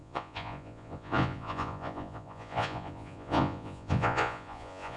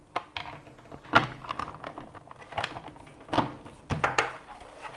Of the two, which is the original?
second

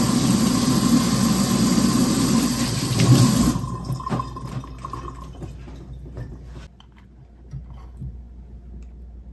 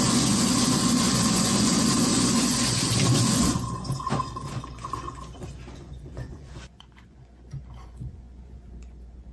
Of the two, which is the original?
first